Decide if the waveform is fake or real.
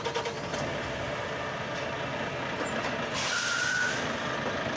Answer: real